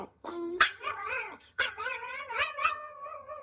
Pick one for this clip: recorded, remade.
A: remade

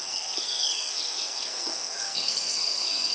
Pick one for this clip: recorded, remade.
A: remade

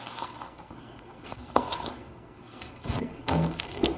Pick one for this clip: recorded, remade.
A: remade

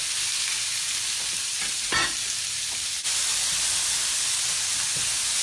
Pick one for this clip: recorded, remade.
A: recorded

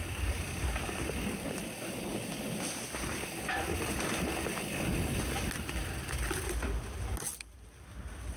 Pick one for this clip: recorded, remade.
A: recorded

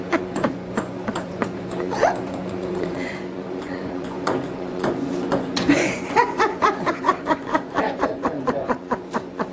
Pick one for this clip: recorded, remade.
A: remade